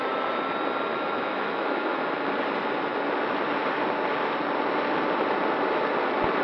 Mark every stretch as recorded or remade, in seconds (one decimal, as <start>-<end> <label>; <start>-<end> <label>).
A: 0.0-0.9 recorded; 0.9-2.0 remade; 2.0-6.4 recorded